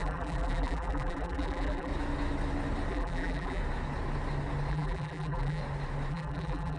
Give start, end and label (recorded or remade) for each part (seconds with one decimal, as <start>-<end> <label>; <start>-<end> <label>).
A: 0.0-1.9 remade; 1.9-2.9 recorded; 2.9-3.6 remade; 3.6-4.7 recorded; 4.7-5.6 remade; 5.6-6.1 recorded; 6.1-6.8 remade